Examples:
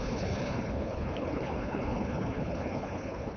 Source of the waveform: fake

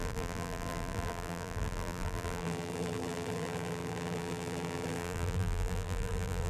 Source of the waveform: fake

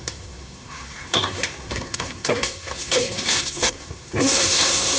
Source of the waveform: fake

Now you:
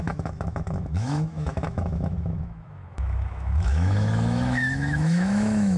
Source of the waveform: fake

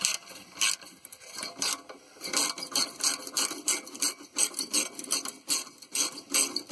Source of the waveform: real